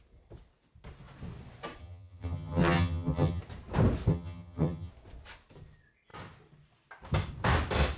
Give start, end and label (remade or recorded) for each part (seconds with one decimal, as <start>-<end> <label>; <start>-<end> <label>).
0.0-1.8 recorded; 1.8-3.4 remade; 3.4-4.1 recorded; 4.1-4.9 remade; 4.9-8.0 recorded